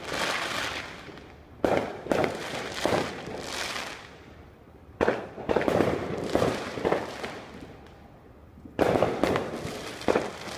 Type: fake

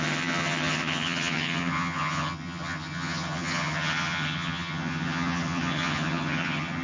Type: fake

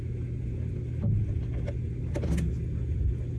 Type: real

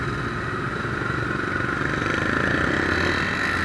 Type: real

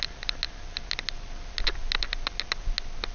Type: real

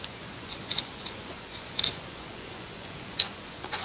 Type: fake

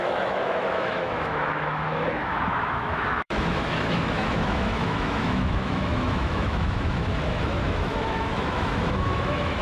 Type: fake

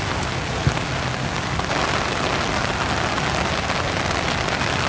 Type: real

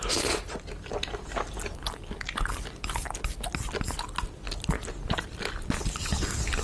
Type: real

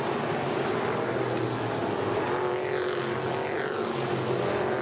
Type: real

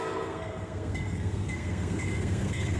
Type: fake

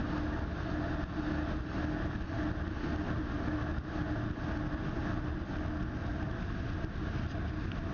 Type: real